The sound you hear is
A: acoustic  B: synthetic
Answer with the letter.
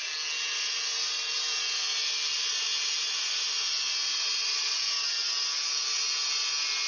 A